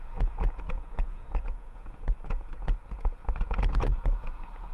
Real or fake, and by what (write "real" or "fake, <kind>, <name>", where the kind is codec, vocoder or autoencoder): fake, vocoder, Vocos